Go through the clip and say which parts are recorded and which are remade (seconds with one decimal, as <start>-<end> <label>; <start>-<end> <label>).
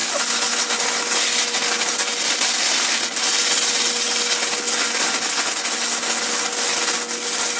0.0-7.6 recorded